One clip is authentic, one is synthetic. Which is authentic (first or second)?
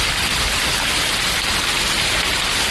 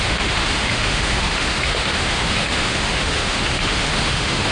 first